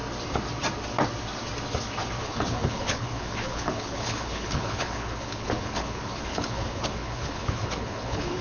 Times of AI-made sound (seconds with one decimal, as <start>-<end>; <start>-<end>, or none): 2.2-8.4